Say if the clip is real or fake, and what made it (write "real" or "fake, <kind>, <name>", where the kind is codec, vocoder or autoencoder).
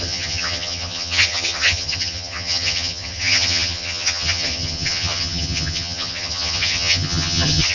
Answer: fake, vocoder, HiFi-GAN